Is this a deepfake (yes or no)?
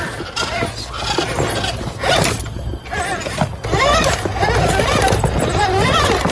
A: no